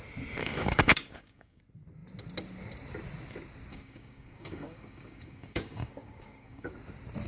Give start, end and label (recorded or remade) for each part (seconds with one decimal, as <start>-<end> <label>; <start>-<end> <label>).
0.0-0.4 recorded; 0.4-1.6 remade; 1.6-3.7 recorded; 3.7-6.7 remade; 6.7-7.3 recorded